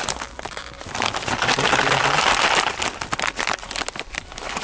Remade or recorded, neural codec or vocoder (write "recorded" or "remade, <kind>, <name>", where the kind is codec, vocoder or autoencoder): recorded